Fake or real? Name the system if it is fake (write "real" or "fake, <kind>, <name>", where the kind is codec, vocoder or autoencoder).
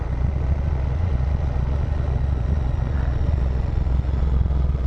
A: fake, vocoder, Vocos